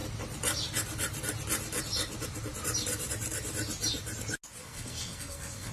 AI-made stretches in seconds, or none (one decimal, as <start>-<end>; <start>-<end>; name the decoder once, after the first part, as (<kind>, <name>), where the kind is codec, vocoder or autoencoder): 4.6-5.7 (codec, SNAC)